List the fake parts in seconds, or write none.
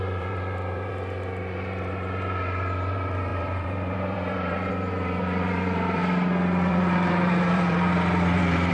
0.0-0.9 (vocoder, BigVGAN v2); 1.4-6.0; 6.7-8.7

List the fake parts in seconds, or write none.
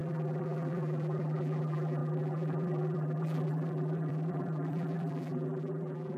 0.0-6.2 (vocoder, BigVGAN v2)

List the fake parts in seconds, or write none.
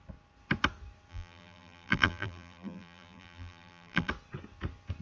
1.1-4.1 (vocoder, BigVGAN v2)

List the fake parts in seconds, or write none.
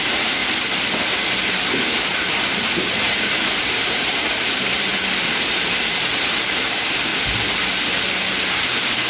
0.0-0.4 (vocoder, BigVGAN v2); 2.4-4.9; 5.8-7.1; 8.6-9.1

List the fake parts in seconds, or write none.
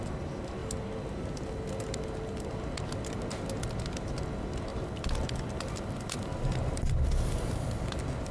4.7-7.8 (vocoder, BigVGAN v2)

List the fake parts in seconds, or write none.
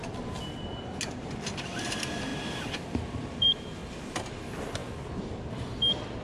1.1-2.3 (vocoder, BigVGAN v2); 3.3-3.8; 4.3-4.8; 5.5-6.2